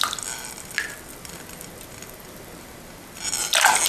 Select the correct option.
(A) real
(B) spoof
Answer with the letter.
A